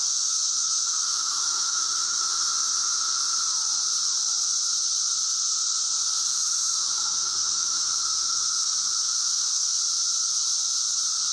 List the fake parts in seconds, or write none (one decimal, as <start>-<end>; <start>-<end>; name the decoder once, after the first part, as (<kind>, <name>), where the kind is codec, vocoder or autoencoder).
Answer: 0.0-2.4 (autoencoder, DAC-VAE); 6.3-9.8